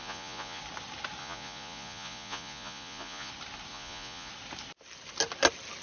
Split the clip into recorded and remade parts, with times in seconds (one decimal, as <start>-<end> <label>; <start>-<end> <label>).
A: 0.0-0.6 remade; 0.6-1.2 recorded; 1.2-3.3 remade; 3.3-3.7 recorded; 3.7-4.3 remade; 4.3-5.8 recorded